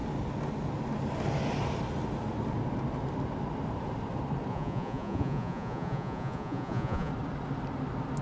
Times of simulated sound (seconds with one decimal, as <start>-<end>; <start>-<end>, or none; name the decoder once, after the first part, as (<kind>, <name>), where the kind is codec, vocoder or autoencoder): 4.5-7.1 (vocoder, Vocos)